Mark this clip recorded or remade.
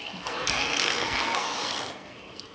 remade